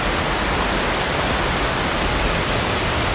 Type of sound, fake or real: real